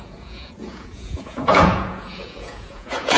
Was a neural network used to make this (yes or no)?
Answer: yes